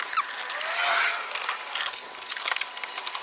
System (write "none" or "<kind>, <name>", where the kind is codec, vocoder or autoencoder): none